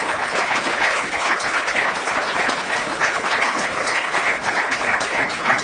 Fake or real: fake